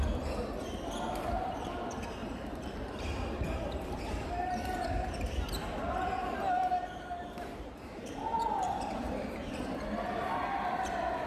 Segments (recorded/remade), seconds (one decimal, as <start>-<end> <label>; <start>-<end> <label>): 0.0-2.2 recorded; 2.2-4.0 remade; 4.0-6.2 recorded; 6.2-9.5 remade; 9.5-11.3 recorded